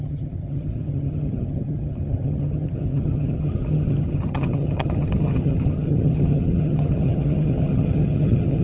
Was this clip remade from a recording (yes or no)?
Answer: yes